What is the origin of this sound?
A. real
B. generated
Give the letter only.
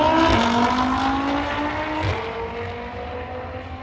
A